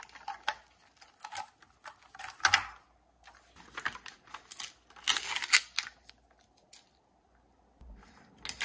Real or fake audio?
real